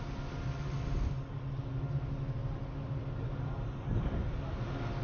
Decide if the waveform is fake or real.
real